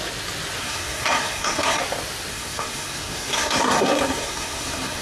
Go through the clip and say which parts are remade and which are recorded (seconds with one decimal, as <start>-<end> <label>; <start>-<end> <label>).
0.0-0.6 recorded; 0.6-1.8 remade; 1.8-2.3 recorded; 2.3-5.0 remade

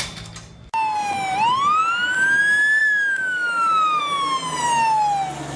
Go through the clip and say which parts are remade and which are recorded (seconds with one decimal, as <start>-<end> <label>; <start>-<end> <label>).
0.0-2.8 recorded; 2.8-4.0 remade; 4.0-5.6 recorded

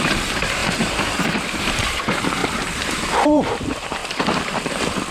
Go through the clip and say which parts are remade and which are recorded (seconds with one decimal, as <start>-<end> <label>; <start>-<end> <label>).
0.0-4.0 remade; 4.0-5.1 recorded